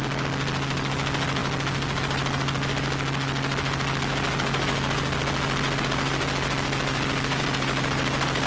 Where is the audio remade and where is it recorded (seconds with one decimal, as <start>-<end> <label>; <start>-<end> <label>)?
0.0-8.5 recorded